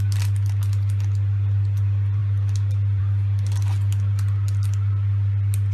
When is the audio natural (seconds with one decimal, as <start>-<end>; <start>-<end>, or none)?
0.0-5.7